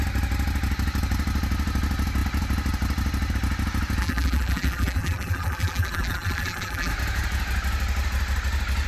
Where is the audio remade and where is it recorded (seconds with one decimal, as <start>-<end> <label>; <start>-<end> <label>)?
0.0-4.0 recorded; 4.0-6.9 remade; 6.9-8.9 recorded